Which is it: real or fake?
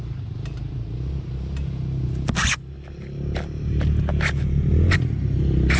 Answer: real